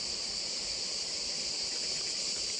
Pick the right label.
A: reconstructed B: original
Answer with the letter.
B